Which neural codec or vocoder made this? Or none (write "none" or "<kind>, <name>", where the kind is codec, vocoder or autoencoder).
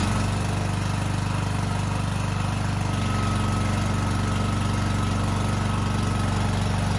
none